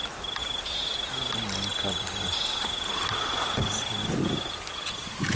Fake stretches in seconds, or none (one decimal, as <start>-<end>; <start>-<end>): 4.0-5.4